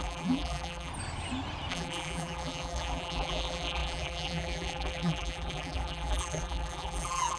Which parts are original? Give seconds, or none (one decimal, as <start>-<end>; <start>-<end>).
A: 0.9-1.7